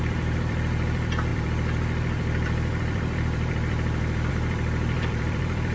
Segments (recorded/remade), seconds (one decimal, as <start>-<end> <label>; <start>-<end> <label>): 0.0-5.7 remade